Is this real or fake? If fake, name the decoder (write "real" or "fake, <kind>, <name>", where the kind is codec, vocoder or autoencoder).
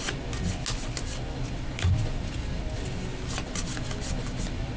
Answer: real